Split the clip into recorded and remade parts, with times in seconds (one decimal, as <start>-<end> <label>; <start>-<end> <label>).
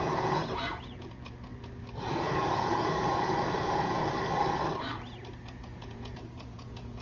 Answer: 0.0-1.5 remade; 1.5-2.0 recorded; 2.0-4.0 remade; 4.0-5.6 recorded; 5.6-7.0 remade